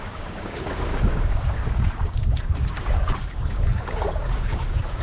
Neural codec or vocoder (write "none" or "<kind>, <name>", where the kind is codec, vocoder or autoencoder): codec, DAC